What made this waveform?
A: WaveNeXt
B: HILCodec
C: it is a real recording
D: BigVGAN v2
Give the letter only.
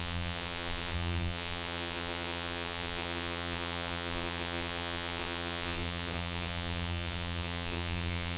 A